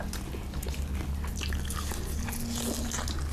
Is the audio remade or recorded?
recorded